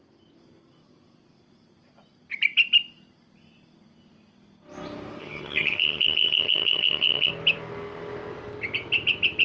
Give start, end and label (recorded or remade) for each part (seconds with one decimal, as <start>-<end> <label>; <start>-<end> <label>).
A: 0.0-5.2 recorded; 5.2-7.3 remade; 7.3-9.4 recorded